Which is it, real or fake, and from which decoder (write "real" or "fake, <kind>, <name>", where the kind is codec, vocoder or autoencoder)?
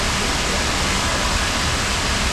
fake, vocoder, BigVGAN v2